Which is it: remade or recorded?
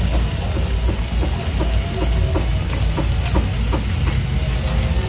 recorded